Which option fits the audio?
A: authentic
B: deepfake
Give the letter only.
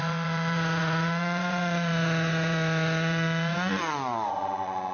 B